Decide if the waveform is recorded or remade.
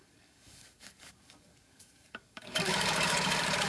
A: remade